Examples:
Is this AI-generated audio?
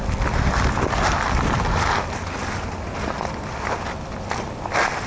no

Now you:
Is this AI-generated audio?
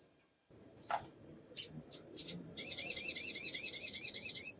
yes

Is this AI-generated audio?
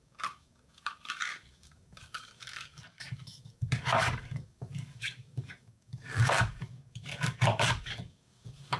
yes